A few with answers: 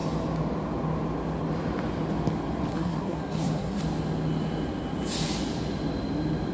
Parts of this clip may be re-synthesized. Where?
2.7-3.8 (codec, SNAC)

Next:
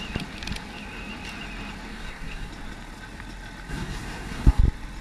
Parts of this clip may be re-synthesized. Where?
1.9-2.5 (codec, SNAC); 3.7-4.6